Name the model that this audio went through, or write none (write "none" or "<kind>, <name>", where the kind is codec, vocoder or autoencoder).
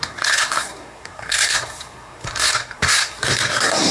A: codec, SNAC